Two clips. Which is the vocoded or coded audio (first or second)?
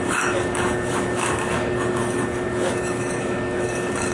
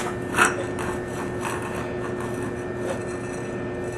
first